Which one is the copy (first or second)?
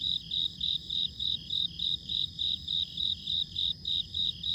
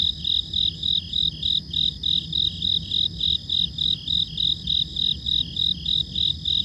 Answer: first